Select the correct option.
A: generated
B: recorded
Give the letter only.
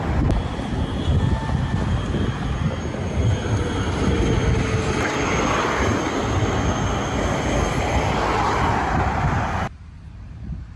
B